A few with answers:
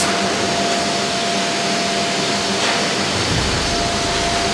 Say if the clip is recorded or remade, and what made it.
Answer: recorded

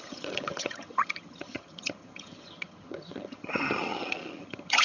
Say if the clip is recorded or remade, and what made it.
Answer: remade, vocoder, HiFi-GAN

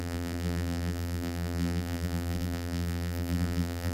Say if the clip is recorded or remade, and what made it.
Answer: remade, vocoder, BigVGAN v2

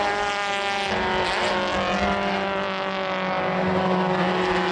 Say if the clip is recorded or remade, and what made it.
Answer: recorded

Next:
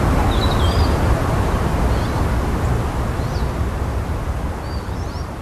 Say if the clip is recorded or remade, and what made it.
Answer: recorded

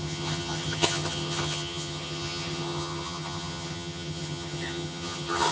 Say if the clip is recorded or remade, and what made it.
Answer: remade, vocoder, HiFi-GAN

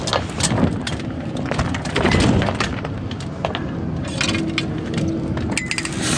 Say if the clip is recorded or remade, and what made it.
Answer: recorded